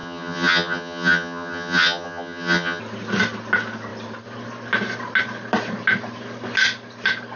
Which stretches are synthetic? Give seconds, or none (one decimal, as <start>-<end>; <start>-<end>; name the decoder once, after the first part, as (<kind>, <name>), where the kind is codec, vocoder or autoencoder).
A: 0.0-2.8 (vocoder, HiFi-GAN)